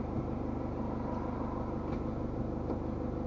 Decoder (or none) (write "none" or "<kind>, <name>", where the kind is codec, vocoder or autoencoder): none